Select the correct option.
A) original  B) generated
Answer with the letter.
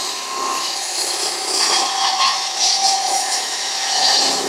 B